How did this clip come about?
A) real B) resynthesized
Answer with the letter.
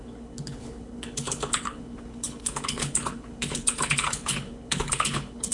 B